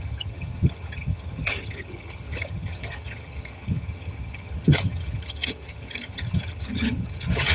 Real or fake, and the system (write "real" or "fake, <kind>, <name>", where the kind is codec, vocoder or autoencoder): fake, vocoder, HiFi-GAN